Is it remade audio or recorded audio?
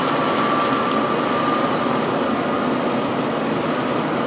recorded